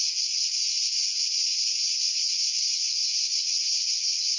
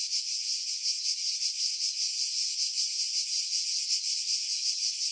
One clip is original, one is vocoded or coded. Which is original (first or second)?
second